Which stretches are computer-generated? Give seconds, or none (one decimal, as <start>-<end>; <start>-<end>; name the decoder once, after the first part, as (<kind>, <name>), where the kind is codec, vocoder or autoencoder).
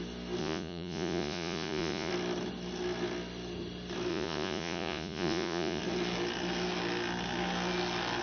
0.4-2.1 (vocoder, Vocos); 4.1-5.8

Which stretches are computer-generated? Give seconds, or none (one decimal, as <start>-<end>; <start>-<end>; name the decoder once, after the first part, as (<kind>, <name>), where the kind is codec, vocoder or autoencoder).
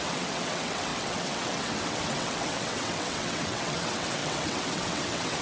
0.0-5.4 (vocoder, WaveNeXt)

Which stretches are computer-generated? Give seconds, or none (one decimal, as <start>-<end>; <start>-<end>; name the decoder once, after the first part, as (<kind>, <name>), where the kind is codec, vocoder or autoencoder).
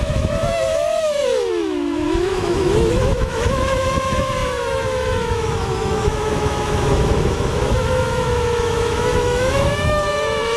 0.0-10.6 (autoencoder, DAC-VAE)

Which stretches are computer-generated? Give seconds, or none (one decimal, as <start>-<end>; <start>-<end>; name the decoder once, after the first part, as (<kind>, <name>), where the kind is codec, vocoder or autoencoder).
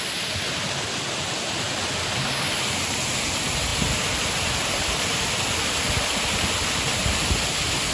none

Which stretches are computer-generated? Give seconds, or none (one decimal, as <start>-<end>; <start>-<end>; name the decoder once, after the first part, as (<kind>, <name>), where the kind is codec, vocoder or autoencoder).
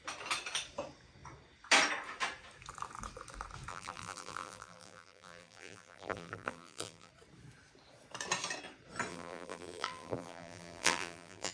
3.7-7.1 (vocoder, BigVGAN v2); 9.1-11.5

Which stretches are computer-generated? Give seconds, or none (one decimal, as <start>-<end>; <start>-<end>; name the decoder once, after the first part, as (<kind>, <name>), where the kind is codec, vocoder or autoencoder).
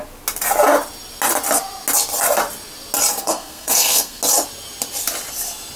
3.1-4.2 (codec, SNAC)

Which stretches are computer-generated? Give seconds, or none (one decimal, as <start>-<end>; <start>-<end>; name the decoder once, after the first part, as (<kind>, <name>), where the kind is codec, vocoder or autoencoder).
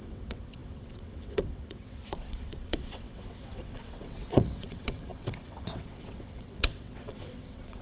0.0-7.8 (vocoder, WaveNeXt)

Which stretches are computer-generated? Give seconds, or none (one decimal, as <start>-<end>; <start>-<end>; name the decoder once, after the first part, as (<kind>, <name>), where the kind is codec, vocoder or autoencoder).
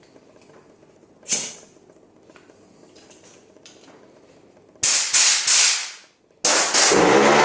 none